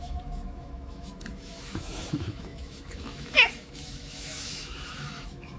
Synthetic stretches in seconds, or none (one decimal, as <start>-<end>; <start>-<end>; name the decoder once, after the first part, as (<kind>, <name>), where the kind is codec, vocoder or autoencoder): 0.0-5.6 (autoencoder, DAC-VAE)